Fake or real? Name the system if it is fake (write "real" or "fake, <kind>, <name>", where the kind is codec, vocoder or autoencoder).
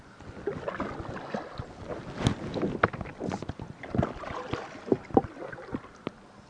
real